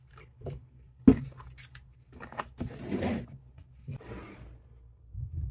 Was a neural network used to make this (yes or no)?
no